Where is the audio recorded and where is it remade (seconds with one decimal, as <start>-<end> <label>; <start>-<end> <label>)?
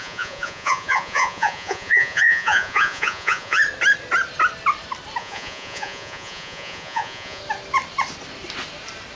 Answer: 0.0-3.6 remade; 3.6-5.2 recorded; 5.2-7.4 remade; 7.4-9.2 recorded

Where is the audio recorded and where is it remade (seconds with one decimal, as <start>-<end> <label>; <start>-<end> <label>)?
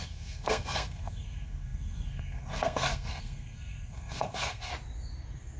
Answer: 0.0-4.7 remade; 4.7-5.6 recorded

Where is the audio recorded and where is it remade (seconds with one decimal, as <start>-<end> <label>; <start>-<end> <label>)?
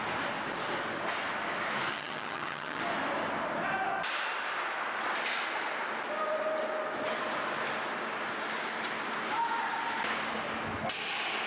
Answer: 0.0-1.9 recorded; 1.9-2.8 remade; 2.8-11.5 recorded